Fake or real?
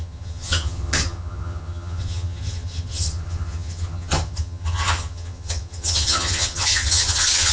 fake